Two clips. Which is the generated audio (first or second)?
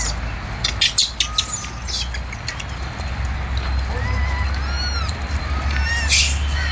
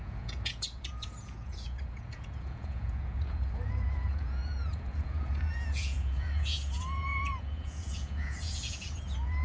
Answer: second